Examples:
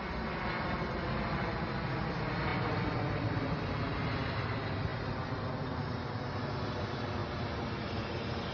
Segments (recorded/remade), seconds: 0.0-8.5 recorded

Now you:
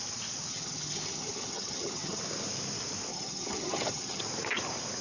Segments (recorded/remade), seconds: 0.0-0.5 recorded; 0.5-2.2 remade; 2.2-3.1 recorded; 3.1-4.2 remade; 4.2-5.0 recorded

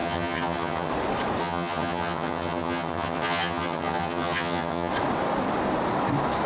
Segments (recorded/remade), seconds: 0.0-0.9 remade; 0.9-1.4 recorded; 1.4-4.9 remade; 4.9-6.5 recorded

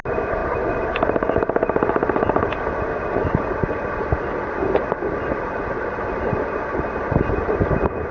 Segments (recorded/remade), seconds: 0.0-8.1 recorded

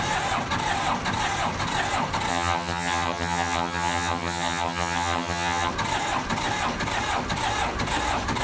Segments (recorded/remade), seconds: 0.0-2.3 recorded; 2.3-5.7 remade; 5.7-8.4 recorded

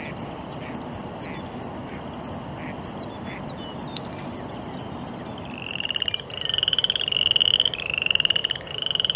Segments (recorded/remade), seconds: 0.0-9.2 recorded

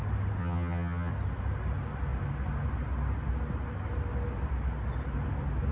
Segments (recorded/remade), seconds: 0.0-0.4 recorded; 0.4-1.1 remade; 1.1-5.7 recorded